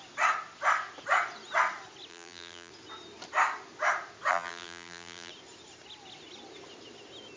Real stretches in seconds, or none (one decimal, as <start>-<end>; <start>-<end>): 0.0-2.1; 2.7-4.3; 5.3-7.4